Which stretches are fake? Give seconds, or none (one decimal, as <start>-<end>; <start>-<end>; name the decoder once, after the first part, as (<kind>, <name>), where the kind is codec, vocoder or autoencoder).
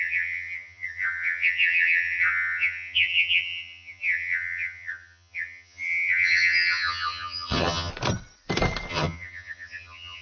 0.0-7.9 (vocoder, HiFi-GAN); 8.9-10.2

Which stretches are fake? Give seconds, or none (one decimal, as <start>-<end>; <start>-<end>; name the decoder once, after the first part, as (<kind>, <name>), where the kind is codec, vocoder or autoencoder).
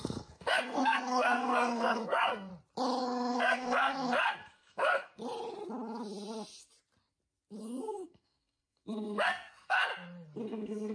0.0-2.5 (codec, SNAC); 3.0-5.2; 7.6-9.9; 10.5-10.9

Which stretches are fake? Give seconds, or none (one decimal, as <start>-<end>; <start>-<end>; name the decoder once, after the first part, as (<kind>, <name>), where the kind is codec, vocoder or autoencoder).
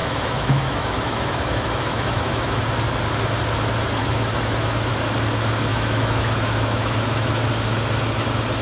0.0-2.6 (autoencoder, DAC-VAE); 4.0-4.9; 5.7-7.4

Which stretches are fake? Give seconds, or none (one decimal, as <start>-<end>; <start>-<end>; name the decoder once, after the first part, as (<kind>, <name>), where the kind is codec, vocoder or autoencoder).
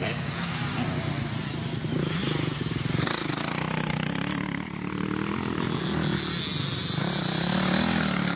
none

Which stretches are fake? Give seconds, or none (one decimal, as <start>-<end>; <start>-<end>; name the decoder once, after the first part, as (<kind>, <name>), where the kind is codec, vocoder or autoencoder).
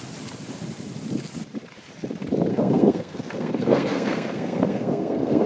2.5-5.5 (codec, SNAC)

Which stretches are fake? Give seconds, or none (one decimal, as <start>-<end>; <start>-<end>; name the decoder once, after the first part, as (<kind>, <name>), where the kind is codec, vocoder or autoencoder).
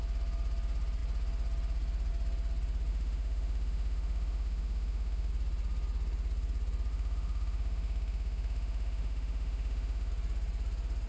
2.9-5.3 (autoencoder, DAC-VAE); 6.9-10.1